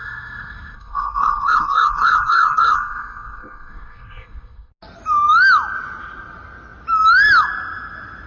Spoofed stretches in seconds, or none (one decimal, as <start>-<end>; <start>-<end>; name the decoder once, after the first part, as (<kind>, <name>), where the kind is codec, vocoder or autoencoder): 0.0-4.7 (codec, SNAC)